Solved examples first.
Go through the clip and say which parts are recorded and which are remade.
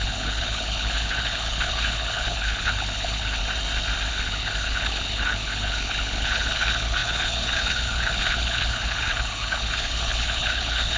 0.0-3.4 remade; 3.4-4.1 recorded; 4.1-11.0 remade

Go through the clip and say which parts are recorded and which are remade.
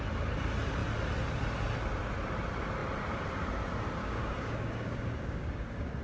0.0-4.0 recorded; 4.0-6.0 remade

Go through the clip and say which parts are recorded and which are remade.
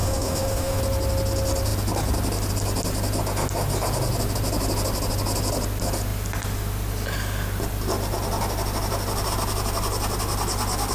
0.0-0.8 remade; 0.8-10.9 recorded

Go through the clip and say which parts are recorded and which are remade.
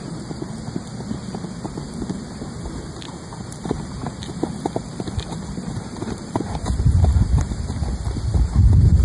0.0-9.0 recorded